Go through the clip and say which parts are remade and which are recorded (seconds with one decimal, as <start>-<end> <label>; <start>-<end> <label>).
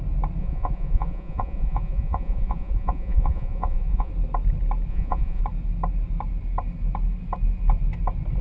0.0-0.4 recorded; 0.4-4.1 remade; 4.1-4.9 recorded; 4.9-5.4 remade; 5.4-8.4 recorded